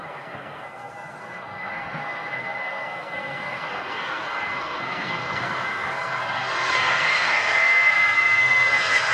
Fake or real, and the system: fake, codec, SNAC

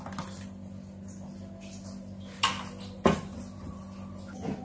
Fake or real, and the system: real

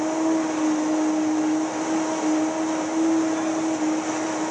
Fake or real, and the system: real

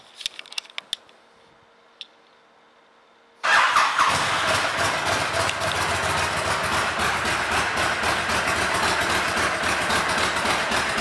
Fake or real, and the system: real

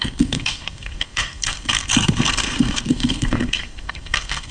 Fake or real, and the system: fake, codec, SNAC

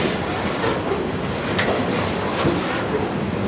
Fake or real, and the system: real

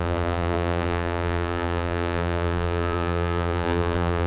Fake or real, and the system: fake, vocoder, BigVGAN v2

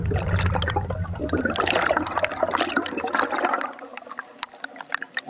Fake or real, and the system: real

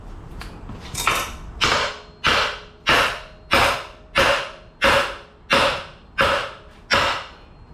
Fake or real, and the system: real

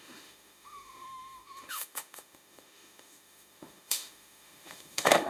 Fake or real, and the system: fake, autoencoder, DAC-VAE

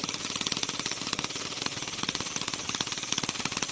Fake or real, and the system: fake, vocoder, BigVGAN v2